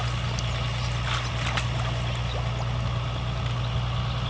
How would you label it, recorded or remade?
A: recorded